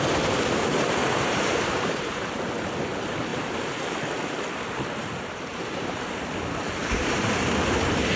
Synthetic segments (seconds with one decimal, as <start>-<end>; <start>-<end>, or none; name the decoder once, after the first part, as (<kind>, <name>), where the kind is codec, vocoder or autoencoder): 1.0-2.5 (vocoder, BigVGAN v2); 3.3-3.8; 5.5-6.2